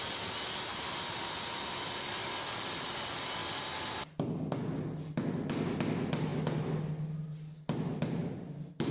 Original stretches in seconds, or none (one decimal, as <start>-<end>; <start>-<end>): 0.0-0.7; 1.2-8.9